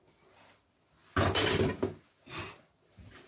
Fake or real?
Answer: real